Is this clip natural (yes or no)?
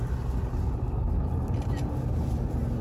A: yes